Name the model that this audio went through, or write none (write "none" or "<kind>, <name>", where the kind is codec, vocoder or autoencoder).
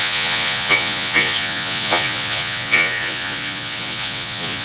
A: vocoder, Vocos